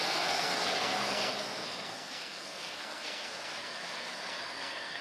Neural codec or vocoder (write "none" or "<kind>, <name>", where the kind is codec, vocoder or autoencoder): codec, SNAC